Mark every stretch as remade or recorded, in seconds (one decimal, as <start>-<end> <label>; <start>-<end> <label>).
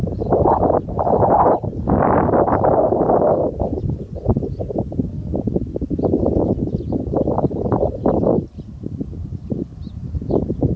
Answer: 0.0-10.8 recorded